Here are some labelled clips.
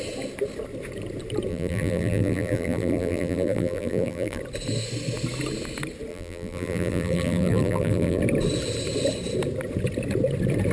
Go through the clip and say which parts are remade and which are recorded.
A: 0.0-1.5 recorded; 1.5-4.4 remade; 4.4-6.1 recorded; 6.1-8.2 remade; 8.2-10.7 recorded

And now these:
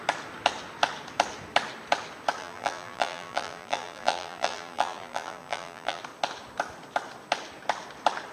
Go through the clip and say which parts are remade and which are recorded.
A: 0.0-2.4 recorded; 2.4-6.0 remade; 6.0-8.3 recorded

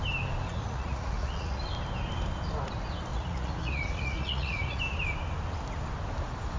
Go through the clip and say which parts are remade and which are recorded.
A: 0.0-0.5 recorded; 0.5-1.6 remade; 1.6-3.1 recorded; 3.1-4.8 remade; 4.8-6.6 recorded

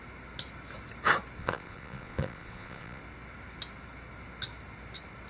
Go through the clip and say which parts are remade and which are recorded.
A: 0.0-1.4 recorded; 1.4-3.0 remade; 3.0-5.3 recorded

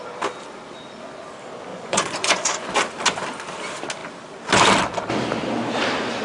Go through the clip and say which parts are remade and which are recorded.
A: 0.0-1.7 recorded; 1.7-2.7 remade; 2.7-6.2 recorded

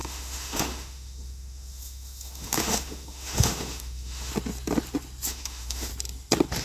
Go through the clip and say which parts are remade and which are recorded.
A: 0.0-4.3 remade; 4.3-5.3 recorded; 5.3-5.9 remade; 5.9-6.6 recorded

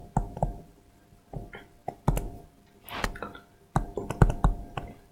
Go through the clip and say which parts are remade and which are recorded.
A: 0.0-5.1 recorded